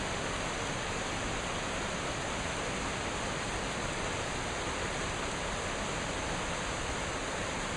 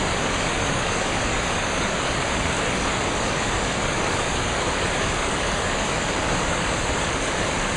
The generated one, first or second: second